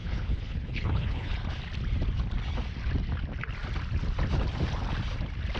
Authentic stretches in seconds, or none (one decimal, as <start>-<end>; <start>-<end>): 1.3-5.6